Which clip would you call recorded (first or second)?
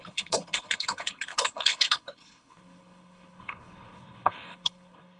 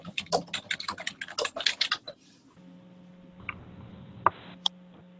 second